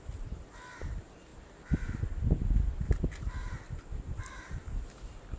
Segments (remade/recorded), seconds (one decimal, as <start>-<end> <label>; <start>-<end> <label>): 0.0-5.4 recorded